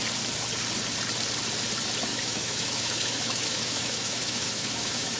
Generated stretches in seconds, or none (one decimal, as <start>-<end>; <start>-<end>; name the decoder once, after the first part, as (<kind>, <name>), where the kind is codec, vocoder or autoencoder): 2.1-5.2 (autoencoder, DAC-VAE)